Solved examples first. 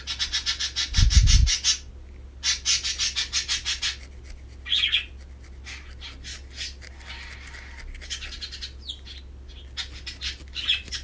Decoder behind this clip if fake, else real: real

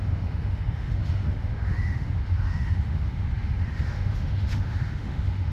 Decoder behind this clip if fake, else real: fake, autoencoder, DAC-VAE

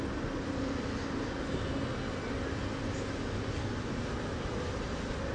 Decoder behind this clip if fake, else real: real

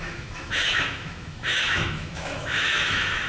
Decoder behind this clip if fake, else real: fake, autoencoder, DAC-VAE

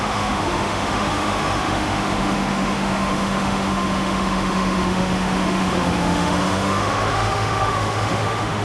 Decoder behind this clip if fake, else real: fake, autoencoder, DAC-VAE